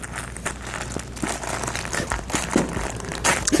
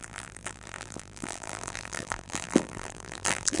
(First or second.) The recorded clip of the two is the first